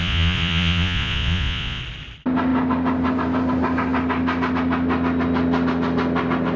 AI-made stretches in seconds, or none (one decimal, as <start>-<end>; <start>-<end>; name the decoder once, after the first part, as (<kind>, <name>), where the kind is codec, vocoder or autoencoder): 0.0-1.8 (vocoder, Vocos)